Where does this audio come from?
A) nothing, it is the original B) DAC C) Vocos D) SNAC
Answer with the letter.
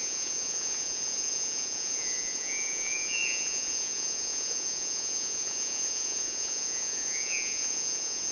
C